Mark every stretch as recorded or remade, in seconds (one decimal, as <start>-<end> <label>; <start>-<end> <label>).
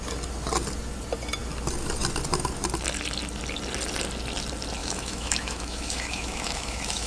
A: 0.0-4.8 recorded; 4.8-7.1 remade